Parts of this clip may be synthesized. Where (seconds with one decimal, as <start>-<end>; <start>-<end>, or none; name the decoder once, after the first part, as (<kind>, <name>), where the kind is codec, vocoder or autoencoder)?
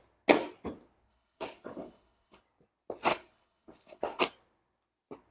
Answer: 1.1-2.4 (codec, HILCodec); 3.1-4.2